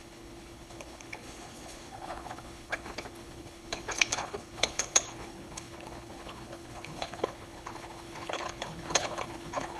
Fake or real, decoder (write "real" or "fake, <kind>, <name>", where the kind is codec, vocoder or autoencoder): fake, codec, HILCodec